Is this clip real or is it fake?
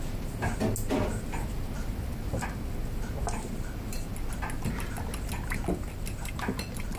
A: real